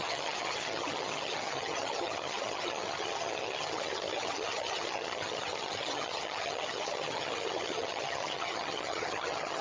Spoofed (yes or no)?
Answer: yes